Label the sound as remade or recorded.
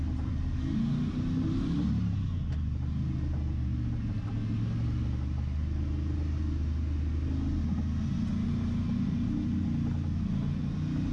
recorded